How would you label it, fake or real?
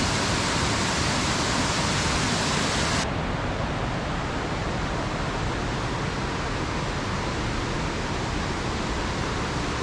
real